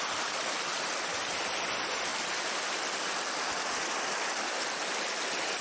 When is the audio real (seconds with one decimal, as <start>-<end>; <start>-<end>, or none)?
0.0-5.6